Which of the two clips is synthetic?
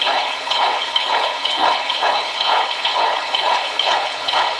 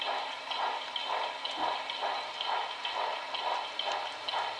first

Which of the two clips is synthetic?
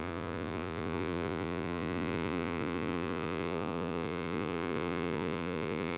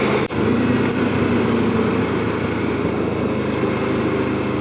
first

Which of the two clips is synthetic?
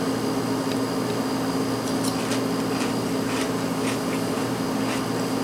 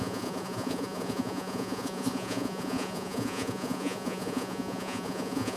second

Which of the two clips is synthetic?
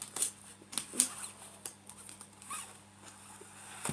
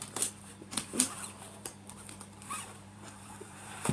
second